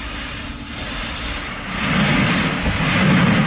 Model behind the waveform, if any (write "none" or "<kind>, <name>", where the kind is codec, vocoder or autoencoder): none